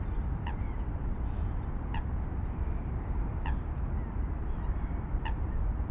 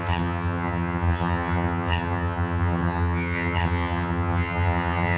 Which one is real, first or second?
first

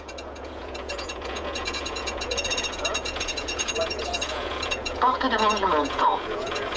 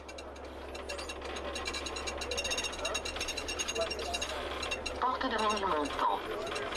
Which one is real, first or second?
second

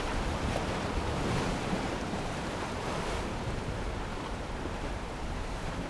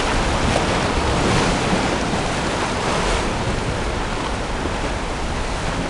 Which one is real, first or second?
second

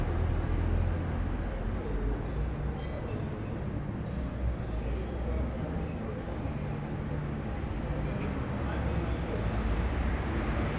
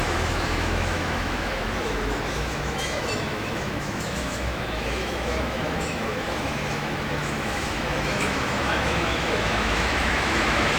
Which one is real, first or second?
first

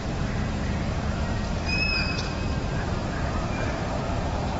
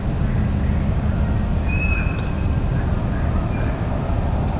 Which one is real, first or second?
second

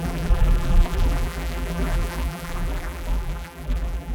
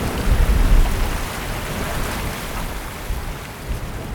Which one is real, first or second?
second